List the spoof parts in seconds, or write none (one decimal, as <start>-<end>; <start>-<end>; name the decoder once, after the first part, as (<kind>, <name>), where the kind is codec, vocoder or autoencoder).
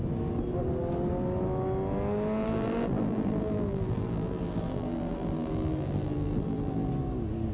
2.4-6.9 (vocoder, BigVGAN v2)